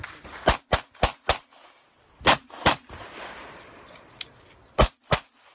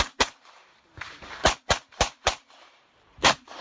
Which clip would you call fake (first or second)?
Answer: second